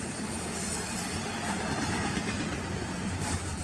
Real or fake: real